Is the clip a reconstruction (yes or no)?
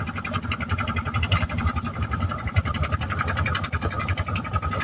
no